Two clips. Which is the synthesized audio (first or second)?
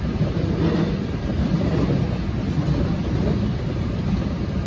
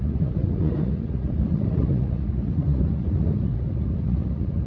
second